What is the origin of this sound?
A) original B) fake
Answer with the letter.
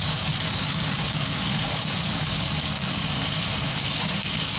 B